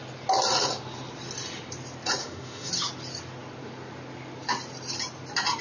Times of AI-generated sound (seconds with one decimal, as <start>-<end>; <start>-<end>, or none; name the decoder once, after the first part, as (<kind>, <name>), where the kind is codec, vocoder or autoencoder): 2.2-2.7 (autoencoder, DAC-VAE)

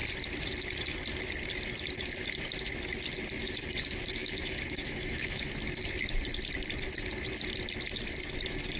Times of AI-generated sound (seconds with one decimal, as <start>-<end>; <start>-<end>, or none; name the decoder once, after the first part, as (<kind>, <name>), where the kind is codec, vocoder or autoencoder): 4.2-5.5 (autoencoder, DAC-VAE)